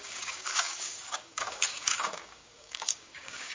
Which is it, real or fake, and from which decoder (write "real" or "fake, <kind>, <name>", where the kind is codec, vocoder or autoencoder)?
fake, codec, DAC